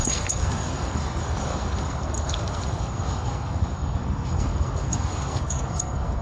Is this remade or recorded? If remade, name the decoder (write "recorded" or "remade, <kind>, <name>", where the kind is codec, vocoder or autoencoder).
remade, codec, SNAC